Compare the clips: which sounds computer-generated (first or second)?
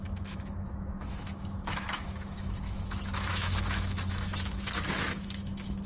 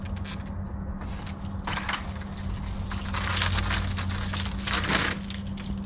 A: first